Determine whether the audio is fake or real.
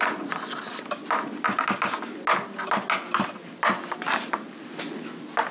real